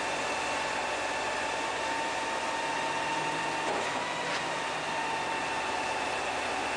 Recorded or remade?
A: remade